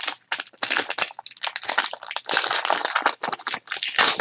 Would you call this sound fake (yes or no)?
no